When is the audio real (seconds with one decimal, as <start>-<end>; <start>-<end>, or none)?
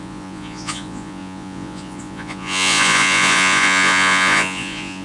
none